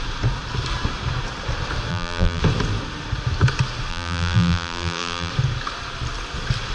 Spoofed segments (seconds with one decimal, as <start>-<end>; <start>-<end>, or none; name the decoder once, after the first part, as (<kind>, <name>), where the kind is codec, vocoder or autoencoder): 1.9-2.4 (vocoder, BigVGAN v2); 3.9-5.3